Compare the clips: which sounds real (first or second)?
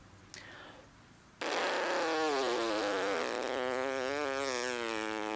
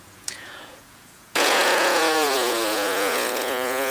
first